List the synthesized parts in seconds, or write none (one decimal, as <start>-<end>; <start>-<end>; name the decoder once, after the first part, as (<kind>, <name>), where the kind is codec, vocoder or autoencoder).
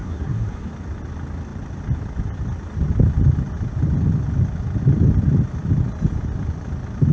0.0-0.7 (codec, SNAC)